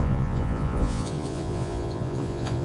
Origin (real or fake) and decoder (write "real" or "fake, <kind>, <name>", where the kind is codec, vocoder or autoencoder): fake, vocoder, Vocos